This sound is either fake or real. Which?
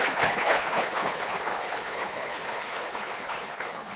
fake